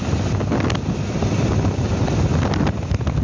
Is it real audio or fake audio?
real